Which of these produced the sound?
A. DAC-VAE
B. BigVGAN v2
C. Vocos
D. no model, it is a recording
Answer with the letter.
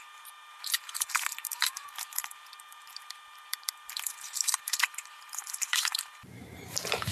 B